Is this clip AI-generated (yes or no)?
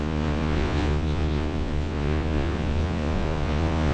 yes